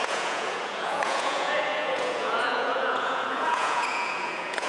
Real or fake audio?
fake